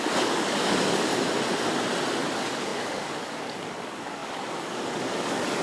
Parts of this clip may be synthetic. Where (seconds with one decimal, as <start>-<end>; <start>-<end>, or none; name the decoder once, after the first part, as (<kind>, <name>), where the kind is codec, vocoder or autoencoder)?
0.0-1.1 (codec, DAC); 2.3-5.6